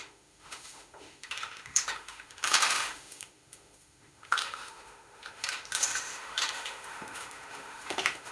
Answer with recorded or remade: remade